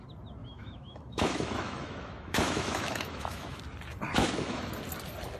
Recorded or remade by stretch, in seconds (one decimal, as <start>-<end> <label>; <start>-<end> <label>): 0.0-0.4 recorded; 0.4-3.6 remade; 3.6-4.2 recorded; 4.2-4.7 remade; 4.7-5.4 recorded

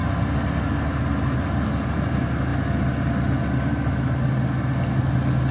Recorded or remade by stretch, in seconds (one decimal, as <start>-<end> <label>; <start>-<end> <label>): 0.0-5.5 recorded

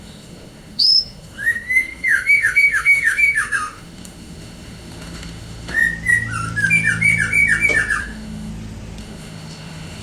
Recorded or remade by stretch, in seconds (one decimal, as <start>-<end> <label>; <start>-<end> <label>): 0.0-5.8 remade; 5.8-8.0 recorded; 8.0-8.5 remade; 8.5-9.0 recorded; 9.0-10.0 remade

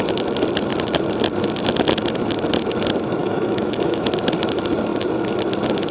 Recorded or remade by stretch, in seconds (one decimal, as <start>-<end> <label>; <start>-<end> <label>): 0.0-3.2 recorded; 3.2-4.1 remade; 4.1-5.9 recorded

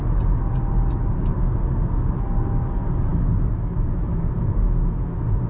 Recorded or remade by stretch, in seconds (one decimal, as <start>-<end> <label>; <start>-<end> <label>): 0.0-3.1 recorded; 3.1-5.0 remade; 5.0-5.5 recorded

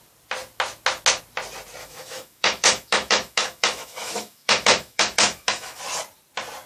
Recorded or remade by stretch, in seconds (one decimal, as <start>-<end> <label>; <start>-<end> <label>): 0.0-1.8 recorded; 1.8-5.8 remade; 5.8-6.7 recorded